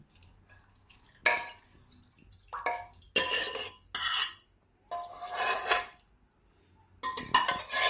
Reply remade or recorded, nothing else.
recorded